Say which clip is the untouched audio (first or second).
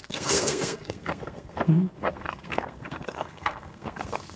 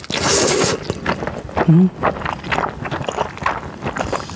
second